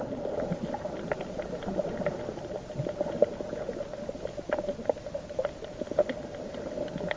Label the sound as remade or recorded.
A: recorded